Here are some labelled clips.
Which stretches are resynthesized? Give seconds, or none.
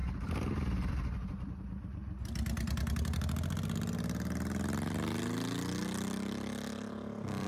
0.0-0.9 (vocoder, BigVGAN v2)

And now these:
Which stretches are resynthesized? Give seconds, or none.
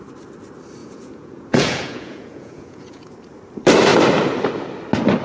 0.8-3.1 (vocoder, Vocos)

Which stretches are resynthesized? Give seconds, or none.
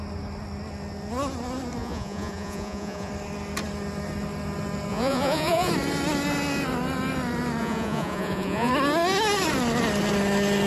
1.8-3.1 (vocoder, Vocos); 4.9-5.7; 7.6-8.7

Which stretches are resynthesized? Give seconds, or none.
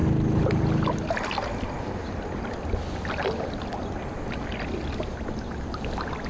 none